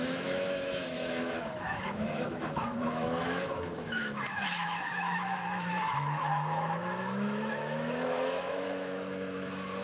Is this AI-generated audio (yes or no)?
yes